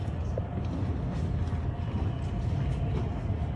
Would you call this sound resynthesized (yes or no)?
no